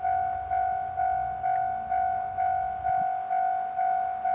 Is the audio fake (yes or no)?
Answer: no